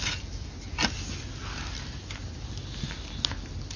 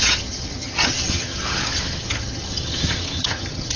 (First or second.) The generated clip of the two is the second